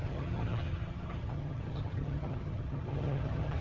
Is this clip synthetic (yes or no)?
yes